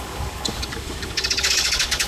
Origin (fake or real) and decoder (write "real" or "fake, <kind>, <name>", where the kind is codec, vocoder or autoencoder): fake, codec, DAC